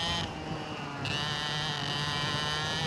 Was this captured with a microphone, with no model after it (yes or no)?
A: yes